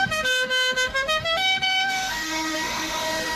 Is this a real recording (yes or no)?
no